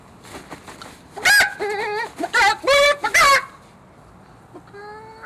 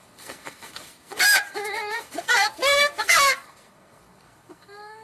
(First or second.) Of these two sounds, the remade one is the second